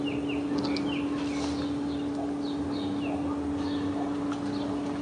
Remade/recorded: recorded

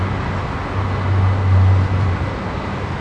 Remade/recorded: recorded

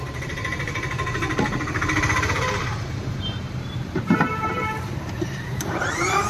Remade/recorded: remade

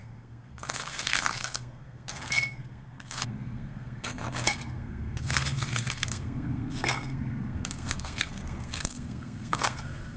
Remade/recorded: remade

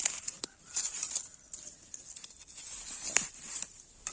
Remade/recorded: recorded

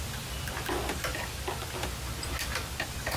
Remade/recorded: recorded